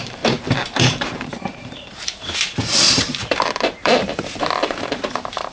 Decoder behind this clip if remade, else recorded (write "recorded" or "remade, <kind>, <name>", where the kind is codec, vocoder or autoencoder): remade, vocoder, BigVGAN v2